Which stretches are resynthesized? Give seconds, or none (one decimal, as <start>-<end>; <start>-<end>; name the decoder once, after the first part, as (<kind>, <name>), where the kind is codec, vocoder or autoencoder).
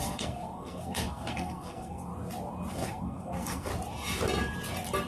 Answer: 0.0-2.1 (codec, SNAC); 2.7-3.7